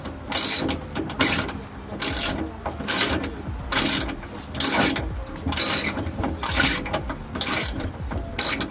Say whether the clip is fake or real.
real